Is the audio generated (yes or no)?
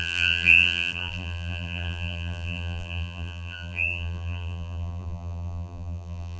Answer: yes